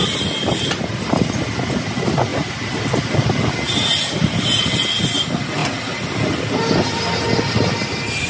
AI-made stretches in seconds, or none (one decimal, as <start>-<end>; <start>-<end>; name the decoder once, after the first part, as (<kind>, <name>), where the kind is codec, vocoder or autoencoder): none